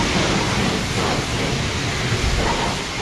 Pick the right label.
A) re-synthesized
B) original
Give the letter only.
B